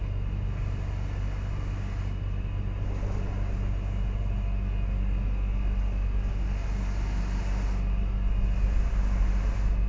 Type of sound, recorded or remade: recorded